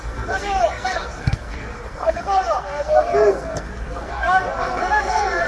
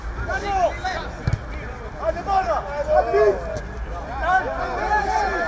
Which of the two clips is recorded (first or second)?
second